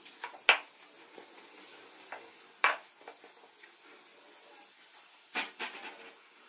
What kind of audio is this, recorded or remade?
recorded